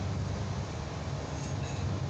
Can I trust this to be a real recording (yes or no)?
yes